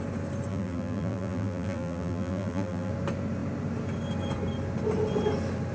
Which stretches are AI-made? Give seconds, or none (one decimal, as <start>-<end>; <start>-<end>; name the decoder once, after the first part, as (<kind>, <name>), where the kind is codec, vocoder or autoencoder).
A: 0.5-2.9 (vocoder, BigVGAN v2)

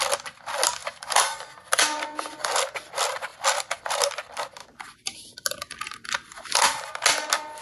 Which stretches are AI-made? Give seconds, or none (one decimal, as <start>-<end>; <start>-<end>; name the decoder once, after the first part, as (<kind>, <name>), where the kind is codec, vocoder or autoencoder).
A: 0.8-2.3 (vocoder, BigVGAN v2); 3.3-4.1; 4.6-6.9

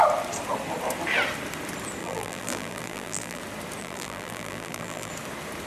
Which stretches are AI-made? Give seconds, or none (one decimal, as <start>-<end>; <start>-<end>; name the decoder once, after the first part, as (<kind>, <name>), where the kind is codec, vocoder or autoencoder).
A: 2.0-3.4 (vocoder, BigVGAN v2); 3.8-5.1

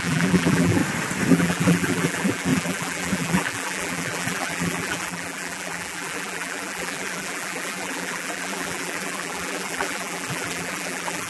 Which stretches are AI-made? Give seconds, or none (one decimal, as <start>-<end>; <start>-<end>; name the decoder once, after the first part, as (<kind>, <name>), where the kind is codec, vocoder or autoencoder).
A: 0.0-0.8 (vocoder, BigVGAN v2); 1.3-11.3

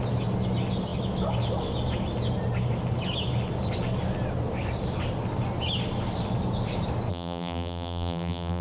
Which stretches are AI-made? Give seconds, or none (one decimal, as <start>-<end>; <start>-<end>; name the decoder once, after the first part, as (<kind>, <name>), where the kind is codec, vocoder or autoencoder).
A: 7.1-8.6 (vocoder, BigVGAN v2)

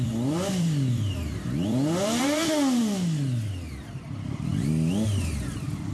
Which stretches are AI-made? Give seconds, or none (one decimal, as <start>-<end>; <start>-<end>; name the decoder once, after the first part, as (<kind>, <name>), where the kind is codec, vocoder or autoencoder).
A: 0.0-2.8 (vocoder, BigVGAN v2); 3.8-4.5

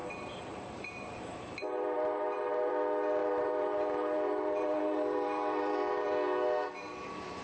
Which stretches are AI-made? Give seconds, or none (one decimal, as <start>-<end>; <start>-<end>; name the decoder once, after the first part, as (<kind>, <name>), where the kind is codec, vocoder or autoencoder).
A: 0.0-2.7 (vocoder, BigVGAN v2); 3.2-6.1

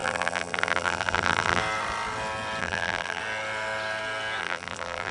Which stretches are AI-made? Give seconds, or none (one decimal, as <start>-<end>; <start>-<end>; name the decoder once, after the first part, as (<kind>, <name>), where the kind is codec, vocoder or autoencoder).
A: 0.0-1.6 (vocoder, BigVGAN v2); 2.6-3.2; 4.4-5.1